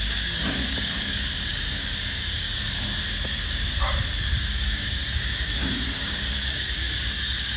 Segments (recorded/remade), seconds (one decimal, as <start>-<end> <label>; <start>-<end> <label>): 0.0-7.6 remade

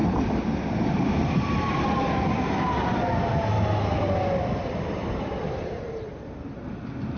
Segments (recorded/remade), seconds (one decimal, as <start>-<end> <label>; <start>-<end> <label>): 0.0-3.0 remade; 3.0-5.0 recorded; 5.0-6.6 remade; 6.6-7.2 recorded

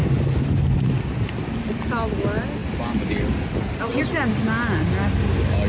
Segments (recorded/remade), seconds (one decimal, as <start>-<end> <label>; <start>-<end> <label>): 0.0-5.7 recorded

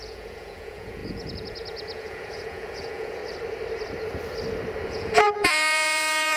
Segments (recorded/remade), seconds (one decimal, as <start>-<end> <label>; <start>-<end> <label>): 0.0-3.2 remade; 3.2-4.9 recorded; 4.9-6.4 remade

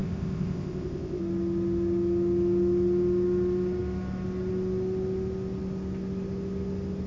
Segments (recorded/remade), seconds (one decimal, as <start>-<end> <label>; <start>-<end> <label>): 0.0-1.2 remade; 1.2-7.1 recorded

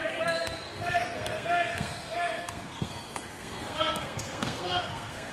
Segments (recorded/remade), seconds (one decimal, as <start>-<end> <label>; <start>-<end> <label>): 0.0-5.3 remade

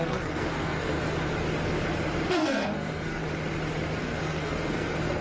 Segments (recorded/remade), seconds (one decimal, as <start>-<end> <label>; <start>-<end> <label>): 0.0-0.9 remade; 0.9-2.3 recorded; 2.3-3.2 remade; 3.2-4.0 recorded; 4.0-5.2 remade

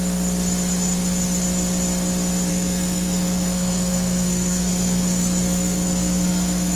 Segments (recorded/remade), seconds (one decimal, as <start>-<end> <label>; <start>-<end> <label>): 0.0-2.5 recorded; 2.5-6.8 remade